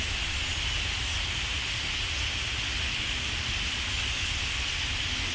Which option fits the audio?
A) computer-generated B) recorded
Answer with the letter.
B